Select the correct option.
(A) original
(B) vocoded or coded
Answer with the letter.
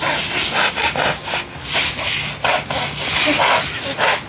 A